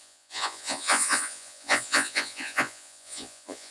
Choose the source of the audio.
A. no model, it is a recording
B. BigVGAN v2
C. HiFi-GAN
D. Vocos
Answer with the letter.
D